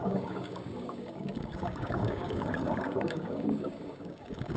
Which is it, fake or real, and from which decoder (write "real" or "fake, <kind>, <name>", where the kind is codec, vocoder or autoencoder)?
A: fake, codec, DAC